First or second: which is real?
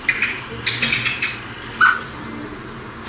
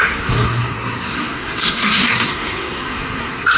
first